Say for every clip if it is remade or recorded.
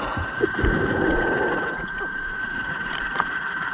remade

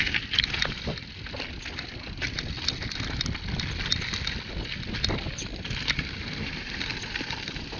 recorded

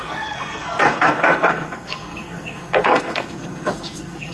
remade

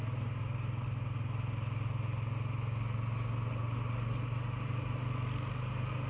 recorded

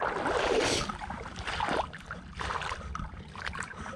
recorded